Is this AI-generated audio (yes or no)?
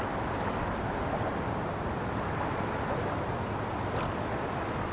no